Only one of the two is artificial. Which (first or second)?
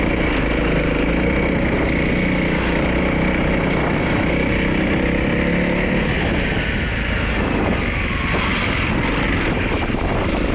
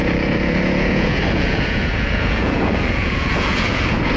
second